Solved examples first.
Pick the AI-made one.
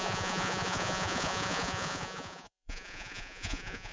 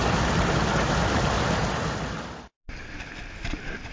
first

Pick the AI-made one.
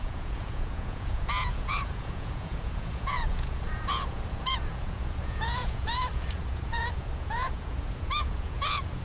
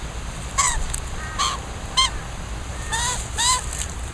first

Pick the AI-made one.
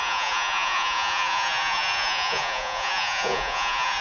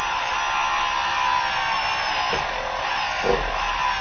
first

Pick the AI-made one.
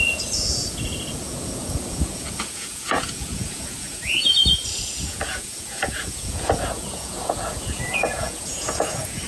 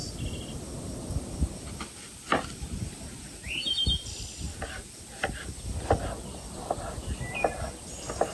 first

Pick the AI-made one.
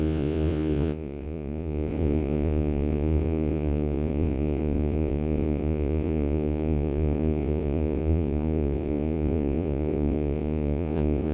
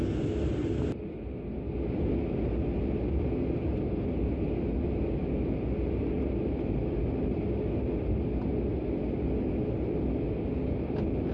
first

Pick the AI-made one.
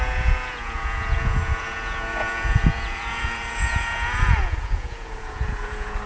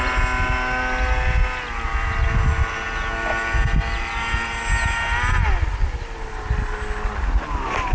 first